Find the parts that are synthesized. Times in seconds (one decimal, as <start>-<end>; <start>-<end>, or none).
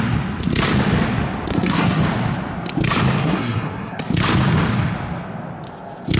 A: 1.5-2.0; 3.2-4.0